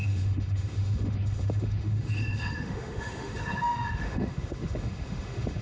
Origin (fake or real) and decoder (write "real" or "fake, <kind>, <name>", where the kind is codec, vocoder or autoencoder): fake, autoencoder, DAC-VAE